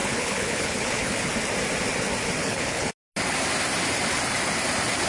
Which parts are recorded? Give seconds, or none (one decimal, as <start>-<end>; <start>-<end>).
1.3-2.4; 2.9-5.1